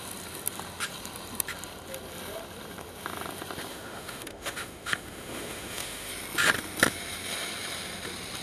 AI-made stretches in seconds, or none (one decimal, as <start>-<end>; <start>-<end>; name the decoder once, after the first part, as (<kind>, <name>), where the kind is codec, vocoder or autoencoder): 3.7-6.1 (autoencoder, DAC-VAE)